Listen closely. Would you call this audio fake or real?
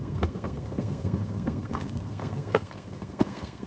fake